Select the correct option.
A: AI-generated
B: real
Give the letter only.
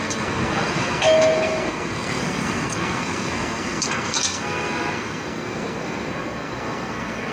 A